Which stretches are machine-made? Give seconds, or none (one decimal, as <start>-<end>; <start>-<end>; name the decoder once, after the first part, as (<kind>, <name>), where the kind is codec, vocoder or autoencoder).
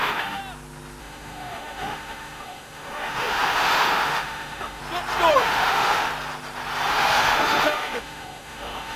0.0-0.4 (autoencoder, DAC-VAE); 1.0-4.8; 5.3-6.1; 6.9-9.0